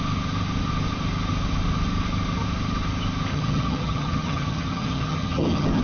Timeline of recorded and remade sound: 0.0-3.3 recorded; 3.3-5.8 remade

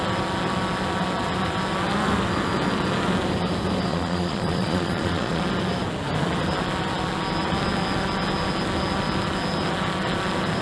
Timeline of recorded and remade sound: 0.0-3.9 recorded; 3.9-5.4 remade; 5.4-10.6 recorded

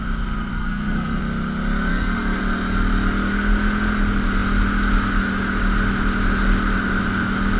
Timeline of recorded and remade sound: 0.0-0.5 recorded; 0.5-1.2 remade; 1.2-1.9 recorded; 1.9-2.4 remade; 2.4-7.6 recorded

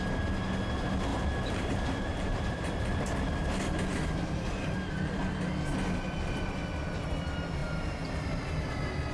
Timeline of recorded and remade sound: 0.0-1.1 recorded; 1.1-3.5 remade; 3.5-3.9 recorded; 3.9-4.5 remade; 4.5-7.6 recorded; 7.6-8.5 remade; 8.5-9.1 recorded

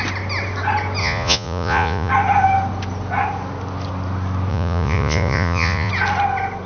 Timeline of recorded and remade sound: 0.0-1.0 recorded; 1.0-2.1 remade; 2.1-4.5 recorded; 4.5-5.9 remade; 5.9-6.7 recorded

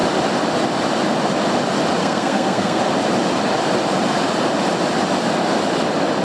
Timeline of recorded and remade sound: 0.0-2.0 recorded; 2.0-2.8 remade; 2.8-6.2 recorded

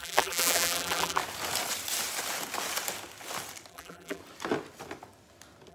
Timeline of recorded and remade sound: 0.0-1.2 remade; 1.2-3.7 recorded; 3.7-4.2 remade; 4.2-5.7 recorded

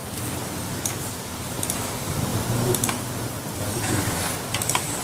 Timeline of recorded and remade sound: 0.0-1.3 recorded; 1.3-2.3 remade; 2.3-5.0 recorded